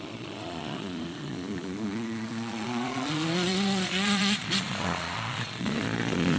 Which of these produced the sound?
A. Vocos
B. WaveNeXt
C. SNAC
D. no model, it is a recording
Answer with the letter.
A